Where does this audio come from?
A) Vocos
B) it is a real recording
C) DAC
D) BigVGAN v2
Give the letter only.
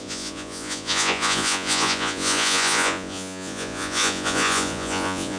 A